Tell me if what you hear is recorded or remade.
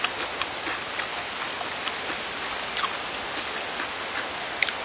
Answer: recorded